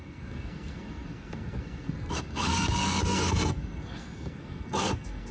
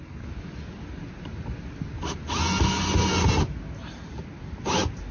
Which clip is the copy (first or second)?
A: first